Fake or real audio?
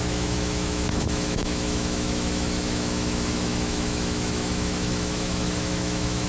fake